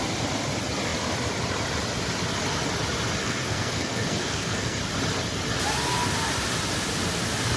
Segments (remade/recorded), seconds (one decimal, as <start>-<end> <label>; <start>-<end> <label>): 0.0-3.2 recorded; 3.2-4.8 remade; 4.8-7.6 recorded